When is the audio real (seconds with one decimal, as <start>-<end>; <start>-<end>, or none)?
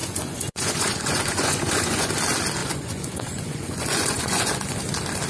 2.1-2.6; 4.8-5.3